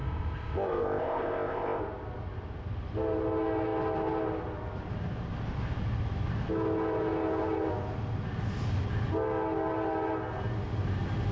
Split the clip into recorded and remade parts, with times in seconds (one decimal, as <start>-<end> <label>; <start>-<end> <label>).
0.0-1.8 remade; 1.8-11.3 recorded